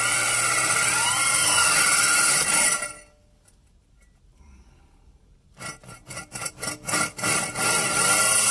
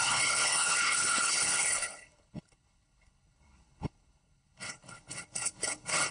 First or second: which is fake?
second